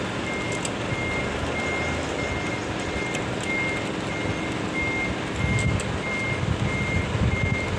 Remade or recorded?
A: recorded